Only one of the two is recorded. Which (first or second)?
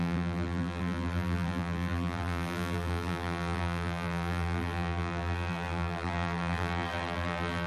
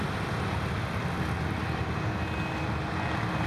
second